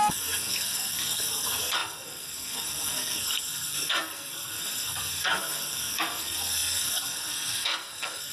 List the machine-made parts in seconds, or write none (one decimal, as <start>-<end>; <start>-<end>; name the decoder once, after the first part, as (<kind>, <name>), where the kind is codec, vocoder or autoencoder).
0.0-8.3 (codec, SNAC)